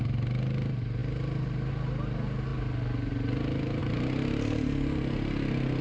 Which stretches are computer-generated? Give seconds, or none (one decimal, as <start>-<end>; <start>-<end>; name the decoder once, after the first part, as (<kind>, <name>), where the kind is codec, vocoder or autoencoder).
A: none